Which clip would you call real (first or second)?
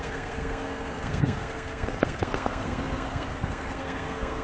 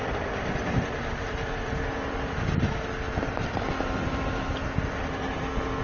second